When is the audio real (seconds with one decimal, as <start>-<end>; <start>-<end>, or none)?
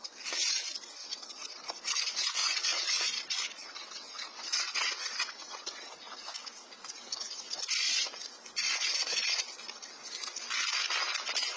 0.0-1.0; 1.6-2.4; 3.0-3.6; 5.9-11.6